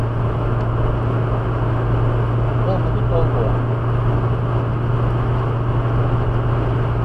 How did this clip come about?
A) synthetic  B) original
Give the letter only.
B